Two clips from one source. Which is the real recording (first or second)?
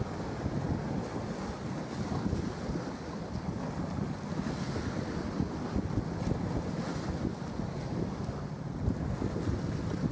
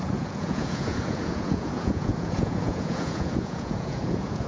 first